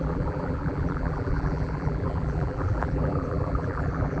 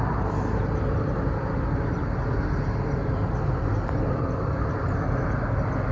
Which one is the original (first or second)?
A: second